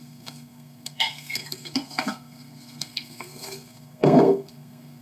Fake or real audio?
fake